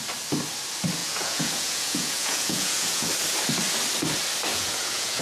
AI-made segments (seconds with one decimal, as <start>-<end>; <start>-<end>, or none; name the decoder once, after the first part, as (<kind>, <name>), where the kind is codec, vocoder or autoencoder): 1.0-3.1 (vocoder, Vocos); 4.5-5.2